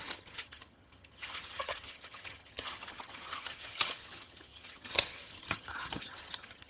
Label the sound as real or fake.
fake